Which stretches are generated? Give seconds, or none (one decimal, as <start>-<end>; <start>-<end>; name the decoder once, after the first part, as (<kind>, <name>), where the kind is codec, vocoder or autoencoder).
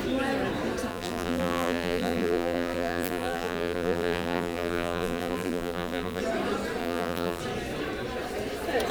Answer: 0.9-6.2 (vocoder, BigVGAN v2); 6.8-7.4